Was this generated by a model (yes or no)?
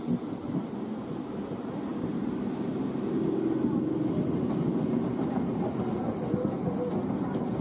no